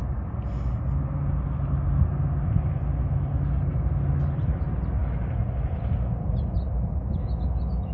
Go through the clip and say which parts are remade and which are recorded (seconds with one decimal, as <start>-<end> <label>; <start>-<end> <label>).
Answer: 0.0-7.9 recorded